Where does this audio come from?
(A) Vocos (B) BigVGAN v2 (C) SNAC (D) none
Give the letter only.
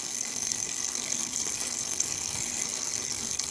C